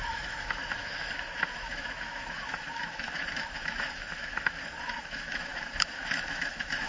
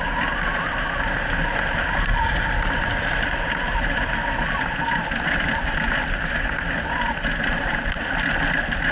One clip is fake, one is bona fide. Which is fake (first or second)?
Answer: first